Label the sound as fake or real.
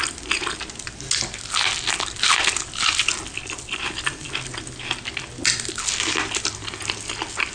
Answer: real